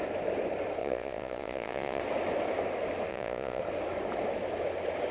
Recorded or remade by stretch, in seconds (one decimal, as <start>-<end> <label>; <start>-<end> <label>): 0.0-0.8 recorded; 0.8-2.0 remade; 2.0-3.1 recorded; 3.1-3.6 remade; 3.6-5.1 recorded